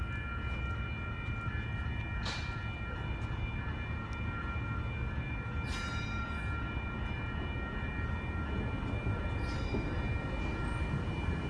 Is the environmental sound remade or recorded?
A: recorded